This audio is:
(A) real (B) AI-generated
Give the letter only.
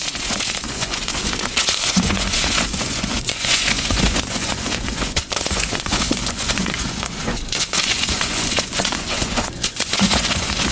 B